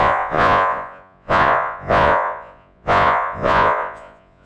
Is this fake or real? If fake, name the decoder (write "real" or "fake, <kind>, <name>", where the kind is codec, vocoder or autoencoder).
fake, vocoder, Vocos